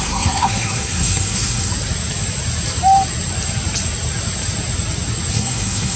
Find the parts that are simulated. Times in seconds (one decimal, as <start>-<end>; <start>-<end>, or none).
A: 0.0-1.7; 5.3-6.0